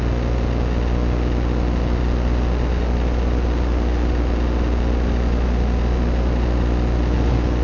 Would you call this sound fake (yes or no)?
no